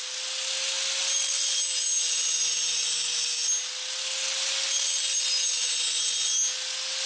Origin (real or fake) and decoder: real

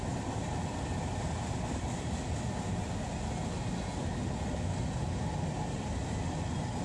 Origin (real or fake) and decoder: real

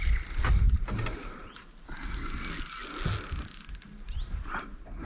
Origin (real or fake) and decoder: real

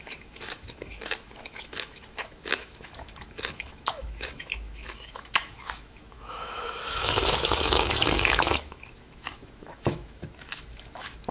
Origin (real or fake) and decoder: fake, autoencoder, DAC-VAE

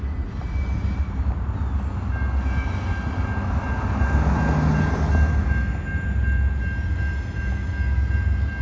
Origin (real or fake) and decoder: real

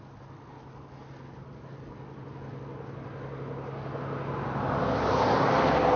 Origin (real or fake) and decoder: real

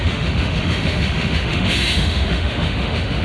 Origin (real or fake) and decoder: fake, autoencoder, DAC-VAE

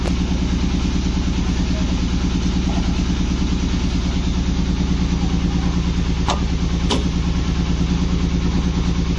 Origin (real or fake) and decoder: real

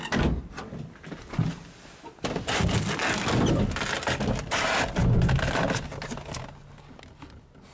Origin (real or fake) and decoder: real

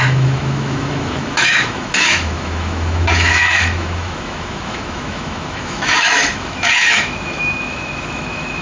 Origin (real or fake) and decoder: fake, autoencoder, DAC-VAE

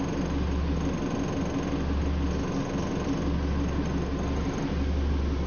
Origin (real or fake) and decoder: real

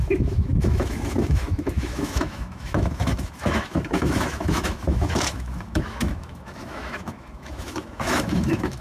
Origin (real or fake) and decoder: fake, autoencoder, DAC-VAE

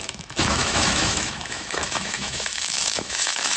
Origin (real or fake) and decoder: fake, autoencoder, DAC-VAE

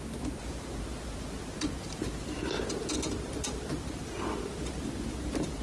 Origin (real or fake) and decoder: real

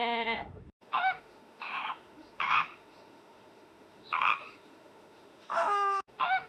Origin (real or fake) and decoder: fake, autoencoder, DAC-VAE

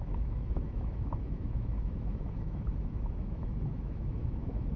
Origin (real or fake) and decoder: fake, autoencoder, DAC-VAE